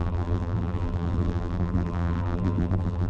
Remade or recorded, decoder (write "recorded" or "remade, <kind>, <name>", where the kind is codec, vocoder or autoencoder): remade, vocoder, BigVGAN v2